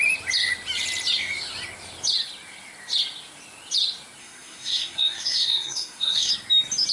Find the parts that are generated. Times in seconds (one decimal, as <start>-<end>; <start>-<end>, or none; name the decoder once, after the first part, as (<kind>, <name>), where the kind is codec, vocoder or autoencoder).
4.2-6.3 (codec, SNAC)